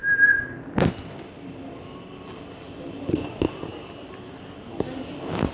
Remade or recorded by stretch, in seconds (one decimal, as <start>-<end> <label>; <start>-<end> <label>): 0.0-3.7 remade; 3.7-4.7 recorded; 4.7-5.5 remade